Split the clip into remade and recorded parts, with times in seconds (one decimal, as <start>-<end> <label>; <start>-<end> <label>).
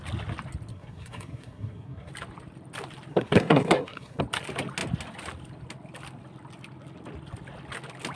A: 0.0-0.7 recorded; 0.7-2.1 remade; 2.1-3.1 recorded; 3.1-4.2 remade; 4.2-8.2 recorded